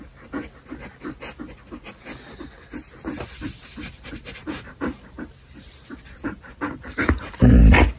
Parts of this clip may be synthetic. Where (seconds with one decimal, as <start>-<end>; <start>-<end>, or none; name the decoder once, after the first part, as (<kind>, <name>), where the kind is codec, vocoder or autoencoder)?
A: 4.4-7.6 (vocoder, BigVGAN v2)